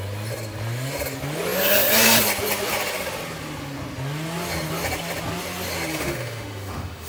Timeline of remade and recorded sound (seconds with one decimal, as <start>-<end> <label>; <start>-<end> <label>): 0.0-5.9 recorded; 5.9-7.1 remade